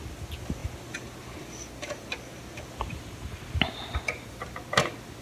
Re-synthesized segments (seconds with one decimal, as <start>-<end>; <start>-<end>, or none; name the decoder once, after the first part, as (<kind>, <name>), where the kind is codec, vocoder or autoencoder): none